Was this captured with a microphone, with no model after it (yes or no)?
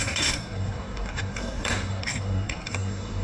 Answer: no